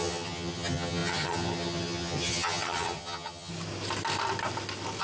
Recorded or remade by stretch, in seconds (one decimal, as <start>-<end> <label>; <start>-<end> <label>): 0.0-3.5 remade; 3.5-5.0 recorded

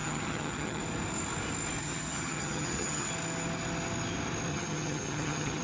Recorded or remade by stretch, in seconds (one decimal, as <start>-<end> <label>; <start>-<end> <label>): 0.0-0.8 remade; 0.8-1.8 recorded; 1.8-3.1 remade; 3.1-4.5 recorded; 4.5-5.6 remade

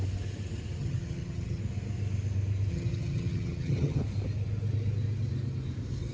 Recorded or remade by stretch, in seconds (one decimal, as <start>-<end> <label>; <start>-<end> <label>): 0.0-0.8 recorded; 0.8-1.6 remade; 1.6-2.7 recorded; 2.7-4.0 remade; 4.0-6.1 recorded

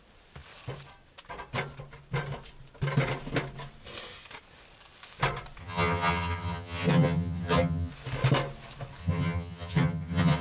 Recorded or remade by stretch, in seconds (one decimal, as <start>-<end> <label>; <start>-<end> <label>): 0.0-5.6 recorded; 5.6-7.9 remade; 7.9-9.0 recorded; 9.0-10.4 remade

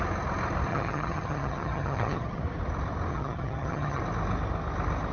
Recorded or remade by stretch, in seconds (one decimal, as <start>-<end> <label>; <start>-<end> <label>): 0.0-0.7 recorded; 0.7-2.4 remade; 2.4-3.1 recorded; 3.1-4.0 remade; 4.0-5.1 recorded

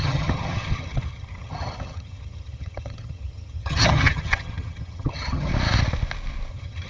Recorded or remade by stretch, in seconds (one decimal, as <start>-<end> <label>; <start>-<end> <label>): 0.0-5.5 remade; 5.5-6.5 recorded; 6.5-6.9 remade

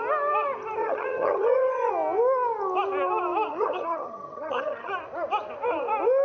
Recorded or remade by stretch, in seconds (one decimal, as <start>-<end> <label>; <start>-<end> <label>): 0.0-0.8 recorded; 0.8-1.9 remade; 1.9-3.5 recorded; 3.5-4.9 remade; 4.9-6.2 recorded